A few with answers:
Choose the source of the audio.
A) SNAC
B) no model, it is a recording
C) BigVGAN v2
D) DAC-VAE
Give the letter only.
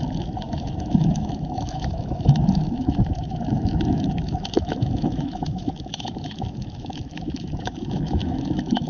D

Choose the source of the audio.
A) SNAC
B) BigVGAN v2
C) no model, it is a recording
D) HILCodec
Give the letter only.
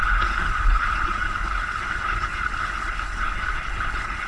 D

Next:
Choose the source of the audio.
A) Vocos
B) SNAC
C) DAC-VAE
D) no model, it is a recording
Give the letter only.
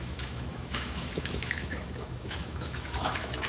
C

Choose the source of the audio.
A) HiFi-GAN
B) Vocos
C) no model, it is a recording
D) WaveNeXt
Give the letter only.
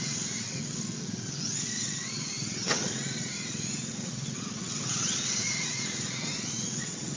D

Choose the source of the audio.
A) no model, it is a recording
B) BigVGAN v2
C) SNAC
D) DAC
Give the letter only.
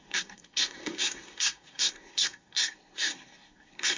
C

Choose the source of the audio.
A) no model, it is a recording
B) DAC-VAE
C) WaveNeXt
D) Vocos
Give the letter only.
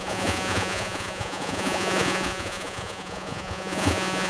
D